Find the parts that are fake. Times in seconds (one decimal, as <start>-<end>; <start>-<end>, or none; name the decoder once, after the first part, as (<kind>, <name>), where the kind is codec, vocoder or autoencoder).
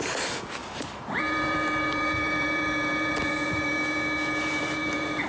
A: 0.6-3.7 (vocoder, BigVGAN v2); 4.6-5.3